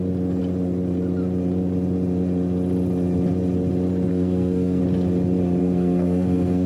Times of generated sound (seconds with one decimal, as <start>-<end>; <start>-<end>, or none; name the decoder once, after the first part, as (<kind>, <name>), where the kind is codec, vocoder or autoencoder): 4.1-4.8 (codec, SNAC); 5.6-6.7